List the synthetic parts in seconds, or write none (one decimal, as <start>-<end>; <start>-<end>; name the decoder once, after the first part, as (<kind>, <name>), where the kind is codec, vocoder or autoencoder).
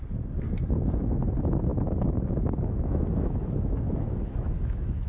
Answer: 1.7-5.1 (autoencoder, DAC-VAE)